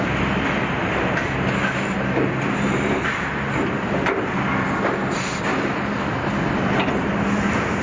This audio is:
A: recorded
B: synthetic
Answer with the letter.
A